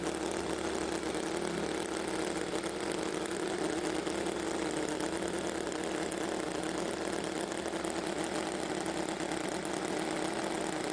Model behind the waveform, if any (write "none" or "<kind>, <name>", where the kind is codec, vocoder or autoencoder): none